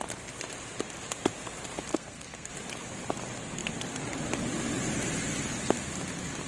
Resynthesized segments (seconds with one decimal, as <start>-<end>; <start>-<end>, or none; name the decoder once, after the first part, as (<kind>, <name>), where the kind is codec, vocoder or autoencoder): 1.9-2.5 (codec, SNAC)